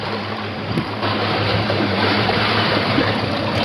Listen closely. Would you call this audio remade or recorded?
remade